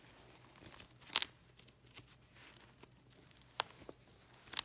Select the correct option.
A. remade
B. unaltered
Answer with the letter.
B